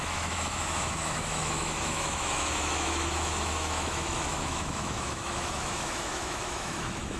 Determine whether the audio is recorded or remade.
remade